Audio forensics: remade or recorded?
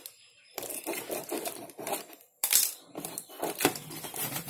remade